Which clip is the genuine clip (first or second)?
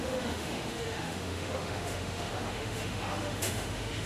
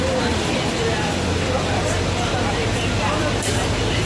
second